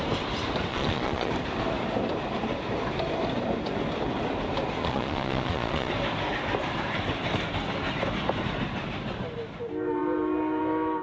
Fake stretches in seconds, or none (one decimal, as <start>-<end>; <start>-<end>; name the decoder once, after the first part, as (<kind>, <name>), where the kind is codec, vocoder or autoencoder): 0.7-1.3 (vocoder, Vocos); 4.8-5.9